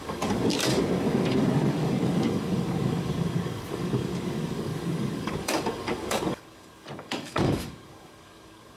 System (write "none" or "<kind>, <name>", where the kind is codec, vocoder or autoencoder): codec, DAC